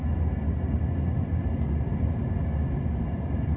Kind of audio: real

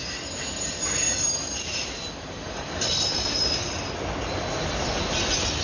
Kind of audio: real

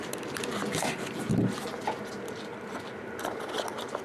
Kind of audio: real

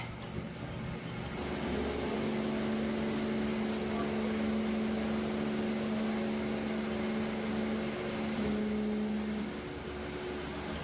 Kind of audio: real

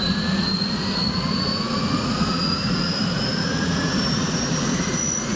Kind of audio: fake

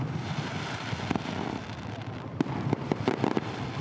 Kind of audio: fake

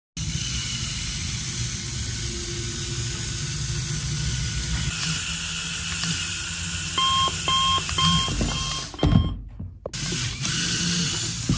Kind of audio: real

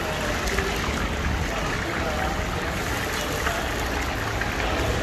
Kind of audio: real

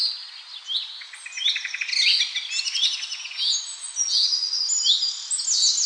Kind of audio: real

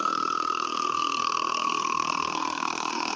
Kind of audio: fake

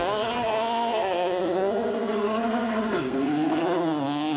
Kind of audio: fake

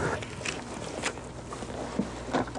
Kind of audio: real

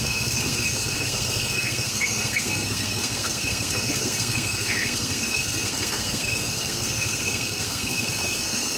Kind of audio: fake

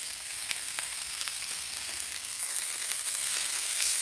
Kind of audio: fake